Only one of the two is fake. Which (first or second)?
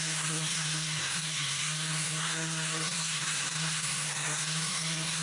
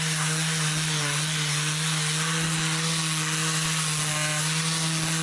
first